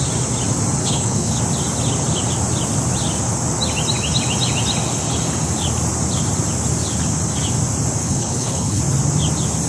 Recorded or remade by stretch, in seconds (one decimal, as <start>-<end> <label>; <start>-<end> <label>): 0.0-0.8 recorded; 0.8-1.4 remade; 1.4-8.0 recorded; 8.0-8.8 remade; 8.8-9.7 recorded